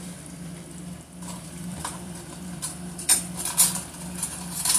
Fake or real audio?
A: fake